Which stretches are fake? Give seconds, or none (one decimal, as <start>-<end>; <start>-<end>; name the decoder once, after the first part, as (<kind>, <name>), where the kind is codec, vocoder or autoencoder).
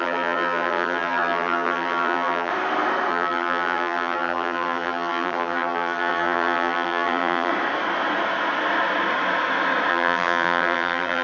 0.0-2.5 (vocoder, BigVGAN v2); 3.1-7.5; 9.9-11.2